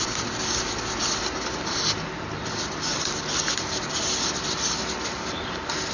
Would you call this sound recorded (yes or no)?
yes